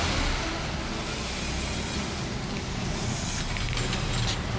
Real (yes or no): yes